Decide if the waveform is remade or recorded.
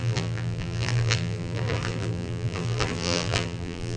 remade